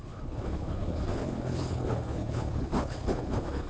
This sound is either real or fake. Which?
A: fake